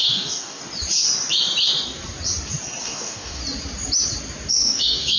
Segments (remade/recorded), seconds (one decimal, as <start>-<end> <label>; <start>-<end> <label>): 0.0-0.6 remade; 0.6-2.8 recorded; 2.8-3.4 remade; 3.4-4.5 recorded; 4.5-5.2 remade